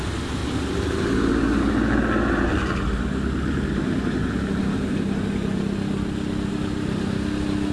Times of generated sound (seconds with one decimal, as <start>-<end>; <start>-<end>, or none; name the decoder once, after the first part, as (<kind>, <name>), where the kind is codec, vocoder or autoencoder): none